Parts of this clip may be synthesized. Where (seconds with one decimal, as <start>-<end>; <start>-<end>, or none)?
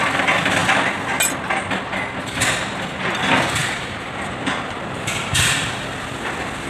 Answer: 3.6-5.7